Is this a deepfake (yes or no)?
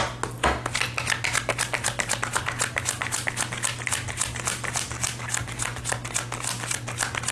no